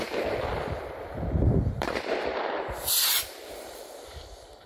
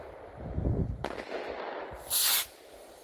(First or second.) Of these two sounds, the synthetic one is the first